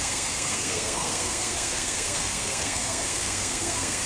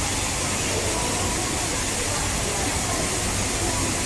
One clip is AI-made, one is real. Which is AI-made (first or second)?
first